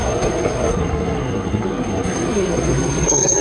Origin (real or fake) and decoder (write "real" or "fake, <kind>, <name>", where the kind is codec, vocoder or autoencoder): fake, codec, SNAC